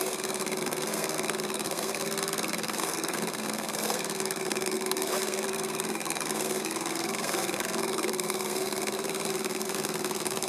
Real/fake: fake